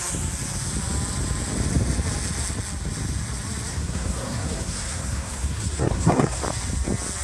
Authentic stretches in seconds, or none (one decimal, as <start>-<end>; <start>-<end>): 0.0-3.7; 6.4-7.2